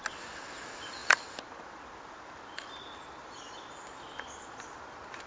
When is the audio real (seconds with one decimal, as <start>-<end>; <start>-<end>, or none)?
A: 0.0-5.3